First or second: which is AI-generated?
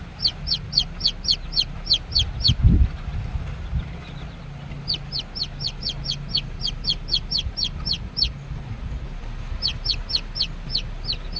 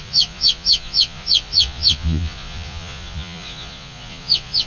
second